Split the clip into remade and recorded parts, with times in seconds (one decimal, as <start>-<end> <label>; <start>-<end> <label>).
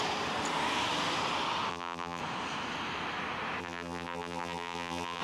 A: 0.0-1.7 recorded; 1.7-2.2 remade; 2.2-3.6 recorded; 3.6-5.2 remade